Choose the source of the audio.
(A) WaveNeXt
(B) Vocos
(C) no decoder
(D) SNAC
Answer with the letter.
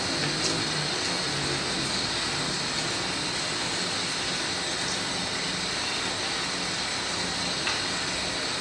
C